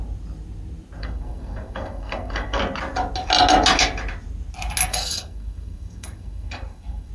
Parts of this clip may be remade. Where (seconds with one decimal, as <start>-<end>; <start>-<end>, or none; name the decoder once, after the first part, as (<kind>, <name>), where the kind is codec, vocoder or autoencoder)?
1.0-2.6 (codec, SNAC); 4.9-7.1